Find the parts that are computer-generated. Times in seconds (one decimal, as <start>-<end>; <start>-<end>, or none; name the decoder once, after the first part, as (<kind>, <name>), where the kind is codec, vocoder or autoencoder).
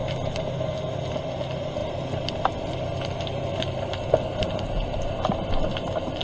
none